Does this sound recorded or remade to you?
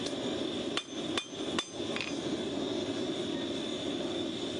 recorded